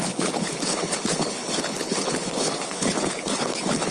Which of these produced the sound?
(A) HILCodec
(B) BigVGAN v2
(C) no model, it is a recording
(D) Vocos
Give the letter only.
A